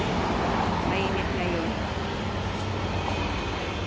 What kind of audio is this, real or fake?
real